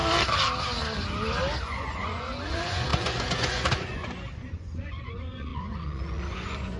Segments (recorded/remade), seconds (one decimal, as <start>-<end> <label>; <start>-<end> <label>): 0.0-1.6 recorded; 1.6-6.8 remade